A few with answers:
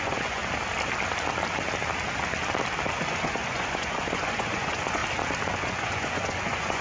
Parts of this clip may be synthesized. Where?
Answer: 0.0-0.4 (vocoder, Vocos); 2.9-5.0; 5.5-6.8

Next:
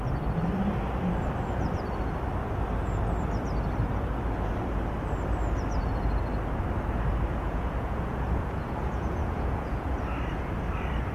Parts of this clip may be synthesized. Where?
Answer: 7.3-10.0 (vocoder, Vocos)

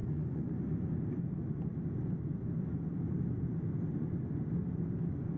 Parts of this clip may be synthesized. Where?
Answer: 0.0-0.9 (vocoder, Vocos)

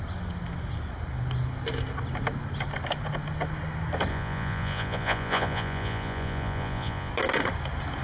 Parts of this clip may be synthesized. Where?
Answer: 4.1-7.1 (vocoder, Vocos)

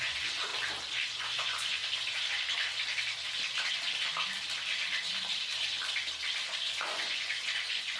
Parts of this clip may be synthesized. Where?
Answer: 0.0-0.5 (vocoder, Vocos); 1.1-1.8; 6.6-8.0